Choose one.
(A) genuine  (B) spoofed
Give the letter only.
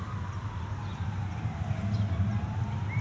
A